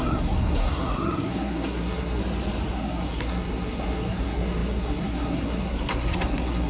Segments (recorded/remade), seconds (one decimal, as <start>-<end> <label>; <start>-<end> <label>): 0.0-2.2 remade; 2.2-2.7 recorded; 2.7-6.7 remade